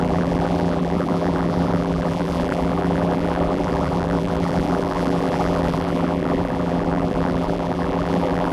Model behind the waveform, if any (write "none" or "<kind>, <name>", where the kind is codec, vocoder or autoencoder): vocoder, BigVGAN v2